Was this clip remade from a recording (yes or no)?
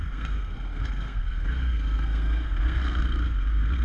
yes